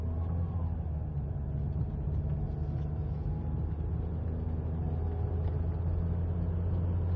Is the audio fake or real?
real